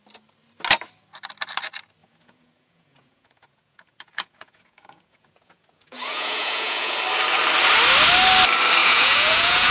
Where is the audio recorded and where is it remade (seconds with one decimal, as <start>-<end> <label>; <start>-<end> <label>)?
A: 0.0-2.0 recorded; 2.0-7.0 remade; 7.0-8.8 recorded; 8.8-9.7 remade